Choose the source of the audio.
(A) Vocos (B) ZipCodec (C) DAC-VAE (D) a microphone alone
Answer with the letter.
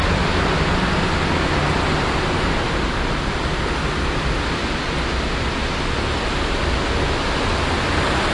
D